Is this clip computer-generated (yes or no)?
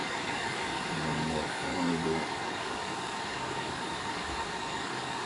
yes